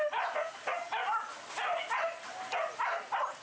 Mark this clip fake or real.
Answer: real